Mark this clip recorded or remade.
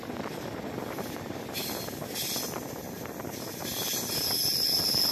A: recorded